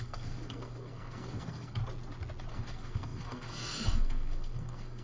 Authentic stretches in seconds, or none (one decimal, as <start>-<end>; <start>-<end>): 1.8-2.5